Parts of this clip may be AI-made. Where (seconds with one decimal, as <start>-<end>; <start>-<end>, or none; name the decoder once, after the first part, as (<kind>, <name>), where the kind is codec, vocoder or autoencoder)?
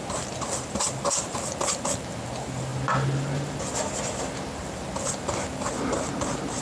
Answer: none